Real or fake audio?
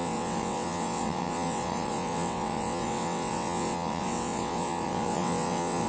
fake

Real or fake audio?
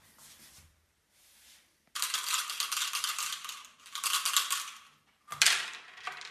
real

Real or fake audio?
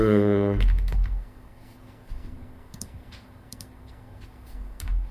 fake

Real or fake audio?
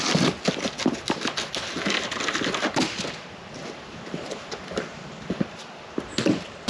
real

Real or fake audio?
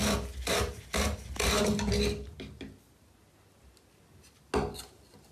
real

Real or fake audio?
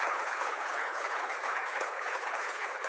fake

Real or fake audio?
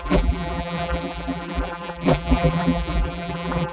fake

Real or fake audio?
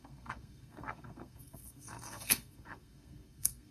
fake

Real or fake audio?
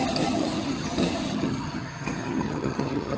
fake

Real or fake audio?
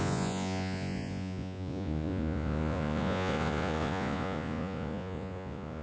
fake